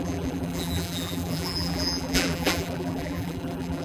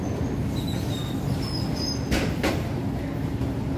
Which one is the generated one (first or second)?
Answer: first